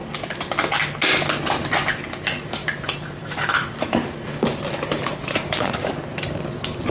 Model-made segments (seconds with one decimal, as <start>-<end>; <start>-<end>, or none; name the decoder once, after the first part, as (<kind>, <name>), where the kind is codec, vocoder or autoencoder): 2.6-5.9 (vocoder, BigVGAN v2)